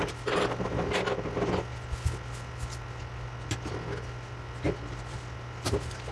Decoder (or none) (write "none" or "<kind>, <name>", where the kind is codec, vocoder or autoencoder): none